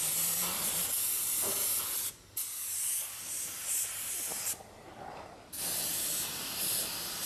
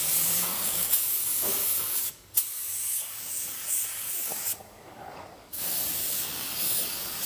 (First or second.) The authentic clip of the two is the first